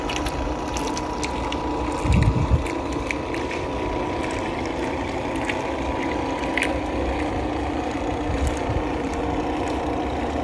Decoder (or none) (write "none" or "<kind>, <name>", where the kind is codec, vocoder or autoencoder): none